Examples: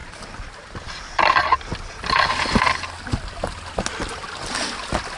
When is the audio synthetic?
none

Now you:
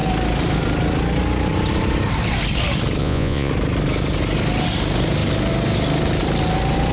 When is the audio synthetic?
3.0-3.5 (vocoder, Vocos)

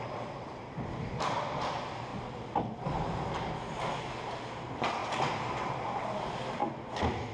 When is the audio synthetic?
0.0-2.1 (vocoder, BigVGAN v2); 4.5-5.0; 5.6-6.6

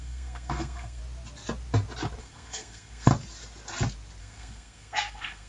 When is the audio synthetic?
0.0-1.0 (codec, SNAC); 2.2-3.1; 4.2-5.5

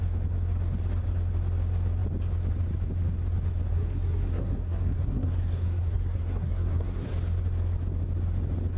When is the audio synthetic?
3.7-7.1 (codec, SNAC)

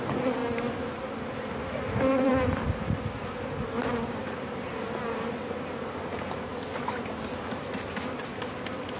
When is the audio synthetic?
none

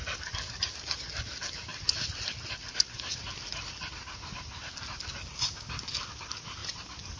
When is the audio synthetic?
none